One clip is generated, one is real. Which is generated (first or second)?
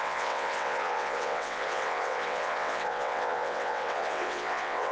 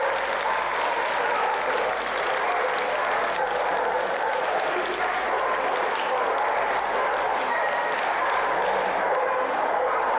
first